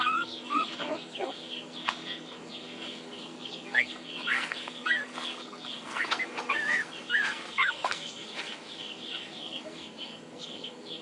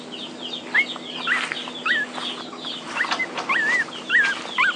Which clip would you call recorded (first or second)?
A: second